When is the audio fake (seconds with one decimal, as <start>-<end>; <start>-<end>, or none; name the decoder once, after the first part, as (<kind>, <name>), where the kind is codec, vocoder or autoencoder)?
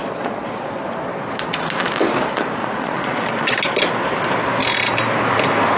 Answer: 0.0-0.7 (vocoder, Vocos); 2.6-3.6